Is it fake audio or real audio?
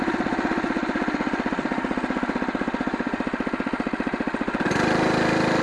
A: real